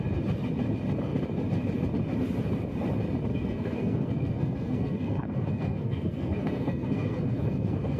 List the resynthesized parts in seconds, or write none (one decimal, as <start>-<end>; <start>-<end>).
3.3-8.0